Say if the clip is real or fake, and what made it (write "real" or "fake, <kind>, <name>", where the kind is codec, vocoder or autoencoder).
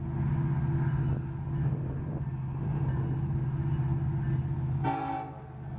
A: real